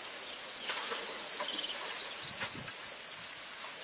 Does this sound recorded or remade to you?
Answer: remade